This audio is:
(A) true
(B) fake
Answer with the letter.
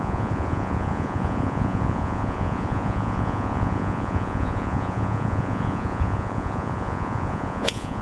B